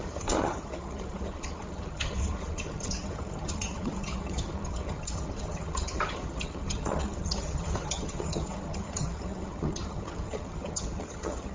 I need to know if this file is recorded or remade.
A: remade